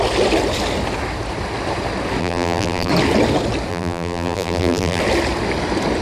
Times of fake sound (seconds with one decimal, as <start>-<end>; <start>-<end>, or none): 2.2-2.9; 3.7-5.0